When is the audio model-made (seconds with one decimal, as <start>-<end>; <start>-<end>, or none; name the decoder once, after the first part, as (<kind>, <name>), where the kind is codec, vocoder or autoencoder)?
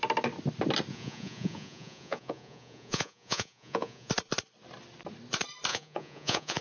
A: 0.9-4.1 (vocoder, Vocos); 5.7-6.6